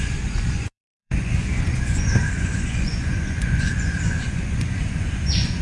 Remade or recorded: remade